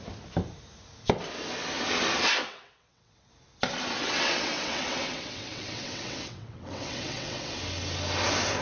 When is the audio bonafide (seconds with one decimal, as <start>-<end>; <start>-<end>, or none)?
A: 0.0-2.4; 3.3-4.0; 7.6-8.6